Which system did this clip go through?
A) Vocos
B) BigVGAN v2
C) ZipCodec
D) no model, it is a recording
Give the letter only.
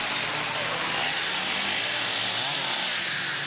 D